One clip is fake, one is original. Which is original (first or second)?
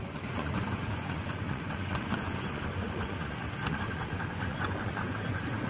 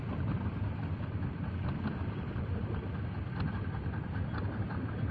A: second